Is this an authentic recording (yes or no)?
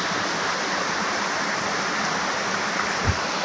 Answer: yes